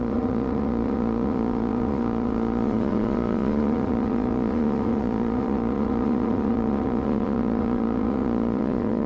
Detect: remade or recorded remade